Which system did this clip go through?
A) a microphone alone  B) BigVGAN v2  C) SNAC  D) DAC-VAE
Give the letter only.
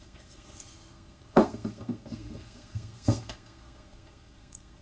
C